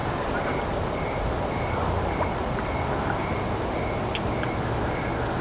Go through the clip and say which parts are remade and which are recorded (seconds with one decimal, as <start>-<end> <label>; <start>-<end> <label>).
0.0-5.4 recorded